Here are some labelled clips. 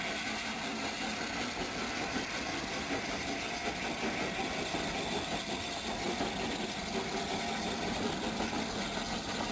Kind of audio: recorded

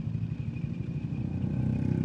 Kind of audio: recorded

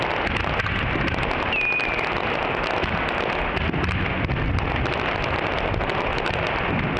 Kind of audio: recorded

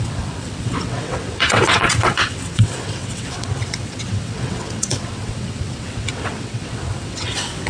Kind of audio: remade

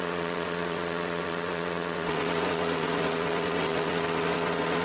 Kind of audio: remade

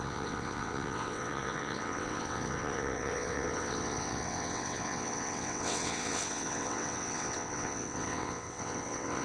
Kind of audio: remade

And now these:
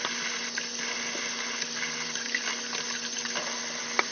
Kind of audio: recorded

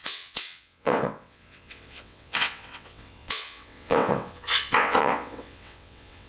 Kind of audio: remade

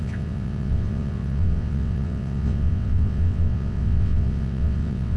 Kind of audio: remade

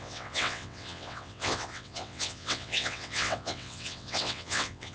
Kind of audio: remade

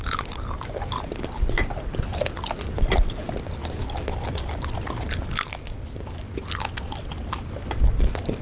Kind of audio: recorded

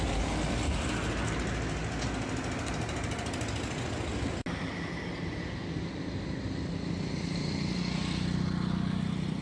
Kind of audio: recorded